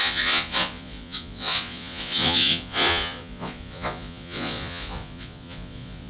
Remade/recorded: remade